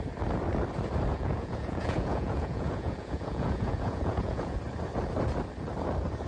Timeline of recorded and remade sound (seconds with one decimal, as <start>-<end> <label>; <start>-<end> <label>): 0.0-1.1 recorded; 1.1-4.6 remade; 4.6-6.3 recorded